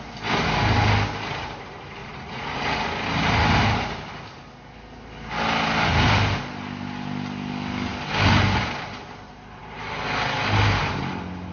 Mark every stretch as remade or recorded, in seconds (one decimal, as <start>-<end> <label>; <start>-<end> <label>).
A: 0.0-2.0 recorded; 2.0-2.8 remade; 2.8-11.5 recorded